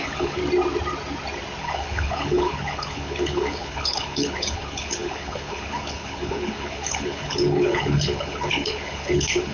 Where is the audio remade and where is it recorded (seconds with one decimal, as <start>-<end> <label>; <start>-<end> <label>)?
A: 0.0-0.4 remade; 0.4-1.6 recorded; 1.6-9.5 remade